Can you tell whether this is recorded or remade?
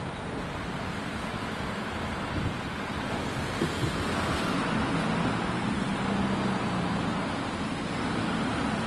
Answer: recorded